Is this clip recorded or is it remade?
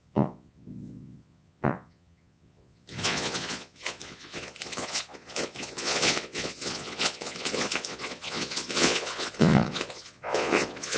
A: remade